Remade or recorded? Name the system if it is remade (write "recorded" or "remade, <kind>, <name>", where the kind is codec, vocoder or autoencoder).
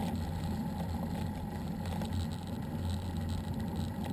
recorded